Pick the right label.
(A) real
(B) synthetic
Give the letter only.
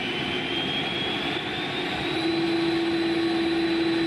A